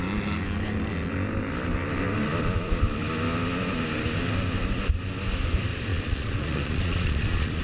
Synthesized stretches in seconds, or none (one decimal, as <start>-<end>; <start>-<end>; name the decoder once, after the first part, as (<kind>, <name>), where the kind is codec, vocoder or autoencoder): 5.9-7.6 (vocoder, Vocos)